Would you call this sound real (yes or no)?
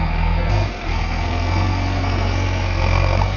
no